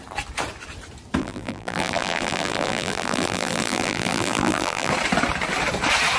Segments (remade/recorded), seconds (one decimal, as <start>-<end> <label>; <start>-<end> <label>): 0.0-1.2 recorded; 1.2-4.9 remade; 4.9-6.2 recorded